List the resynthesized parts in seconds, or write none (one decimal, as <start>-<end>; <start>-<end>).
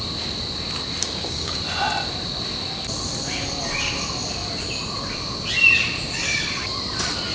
1.0-1.6